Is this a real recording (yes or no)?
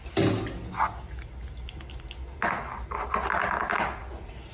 yes